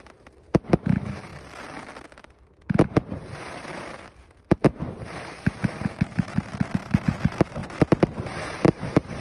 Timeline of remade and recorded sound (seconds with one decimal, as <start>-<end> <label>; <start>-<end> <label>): 0.0-1.3 remade; 1.3-2.2 recorded; 2.2-9.2 remade